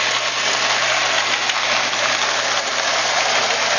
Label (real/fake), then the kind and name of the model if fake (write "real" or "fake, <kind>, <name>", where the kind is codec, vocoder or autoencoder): real